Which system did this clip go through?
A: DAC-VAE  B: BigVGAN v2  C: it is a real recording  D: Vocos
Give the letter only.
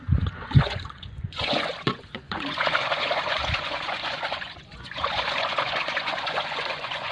D